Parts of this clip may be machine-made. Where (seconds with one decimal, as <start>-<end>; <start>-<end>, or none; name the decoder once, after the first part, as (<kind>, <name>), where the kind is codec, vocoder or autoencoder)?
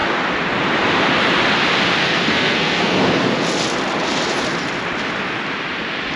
2.0-3.0 (codec, SNAC)